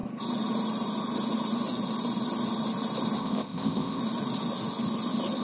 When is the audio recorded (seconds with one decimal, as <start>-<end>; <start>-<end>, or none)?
0.0-3.2; 4.0-5.4